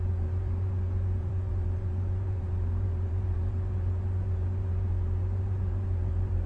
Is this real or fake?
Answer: fake